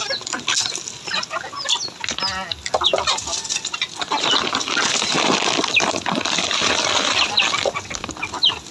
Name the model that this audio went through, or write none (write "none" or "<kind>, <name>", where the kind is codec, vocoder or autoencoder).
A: none